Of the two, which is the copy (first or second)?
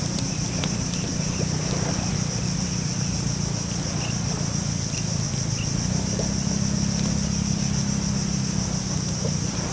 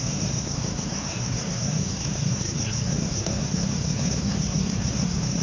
second